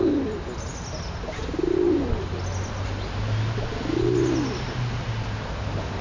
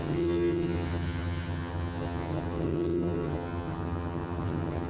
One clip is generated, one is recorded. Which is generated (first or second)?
second